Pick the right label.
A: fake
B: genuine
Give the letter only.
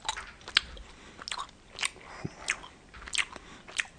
B